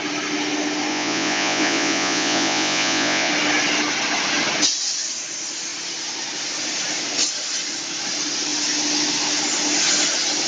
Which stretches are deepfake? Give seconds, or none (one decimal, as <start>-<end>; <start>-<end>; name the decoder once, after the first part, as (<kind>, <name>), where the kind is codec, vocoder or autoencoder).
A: 0.9-3.3 (vocoder, Vocos)